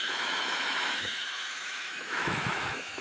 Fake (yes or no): yes